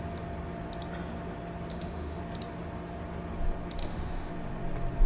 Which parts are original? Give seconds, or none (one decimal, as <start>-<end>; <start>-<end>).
0.0-1.7; 2.2-3.8; 4.3-5.1